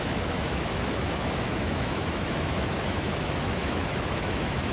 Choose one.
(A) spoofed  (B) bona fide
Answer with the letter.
A